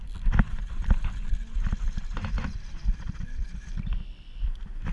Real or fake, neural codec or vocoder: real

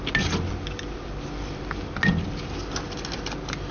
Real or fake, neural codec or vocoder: real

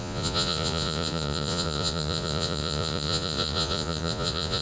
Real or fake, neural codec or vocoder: fake, vocoder, Vocos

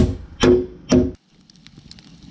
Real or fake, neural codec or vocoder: real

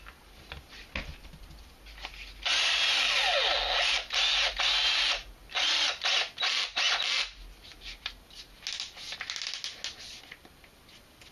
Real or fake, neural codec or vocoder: real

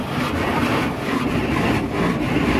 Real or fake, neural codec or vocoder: real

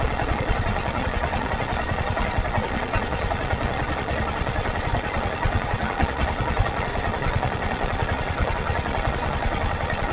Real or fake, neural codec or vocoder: fake, vocoder, Vocos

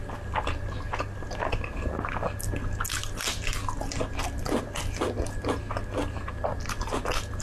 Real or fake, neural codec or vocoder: real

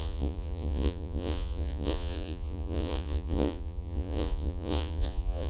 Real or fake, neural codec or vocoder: fake, vocoder, Vocos